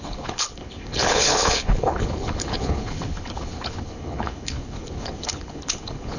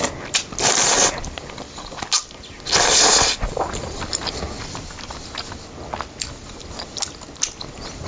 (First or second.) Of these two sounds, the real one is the second